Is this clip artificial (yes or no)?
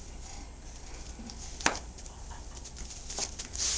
no